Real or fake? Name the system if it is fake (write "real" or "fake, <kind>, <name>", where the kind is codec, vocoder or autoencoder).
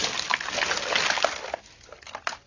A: real